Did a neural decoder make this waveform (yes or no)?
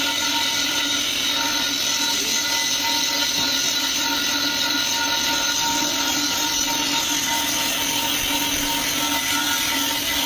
no